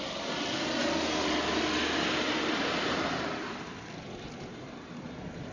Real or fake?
real